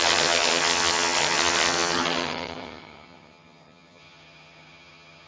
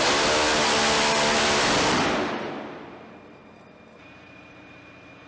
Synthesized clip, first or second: first